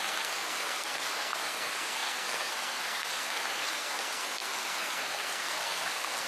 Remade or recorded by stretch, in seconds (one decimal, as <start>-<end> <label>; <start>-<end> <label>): 0.0-6.3 remade

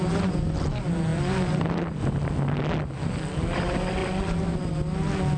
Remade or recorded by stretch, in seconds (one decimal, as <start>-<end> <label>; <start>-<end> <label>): 0.0-5.4 recorded

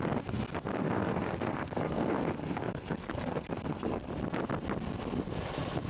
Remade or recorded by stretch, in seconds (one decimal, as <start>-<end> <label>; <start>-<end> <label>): 0.0-0.8 recorded; 0.8-4.1 remade; 4.1-5.9 recorded

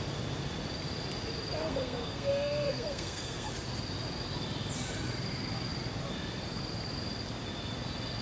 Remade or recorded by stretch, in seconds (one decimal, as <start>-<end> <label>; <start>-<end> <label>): 0.0-1.6 recorded; 1.6-3.5 remade; 3.5-8.2 recorded

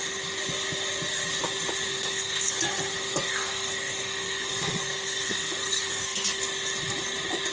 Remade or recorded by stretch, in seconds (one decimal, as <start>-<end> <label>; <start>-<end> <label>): 0.0-1.9 recorded; 1.9-6.4 remade; 6.4-7.5 recorded

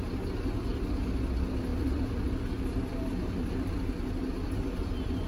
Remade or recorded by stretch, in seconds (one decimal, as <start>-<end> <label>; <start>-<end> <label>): 0.0-5.3 recorded

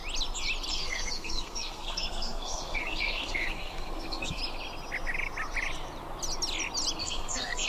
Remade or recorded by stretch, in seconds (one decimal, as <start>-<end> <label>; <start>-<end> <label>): 0.0-0.7 recorded; 0.7-4.4 remade; 4.4-7.0 recorded; 7.0-7.7 remade

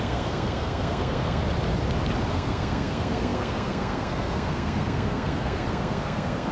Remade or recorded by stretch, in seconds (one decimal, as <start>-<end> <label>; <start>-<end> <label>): 0.0-1.4 remade; 1.4-2.3 recorded; 2.3-6.5 remade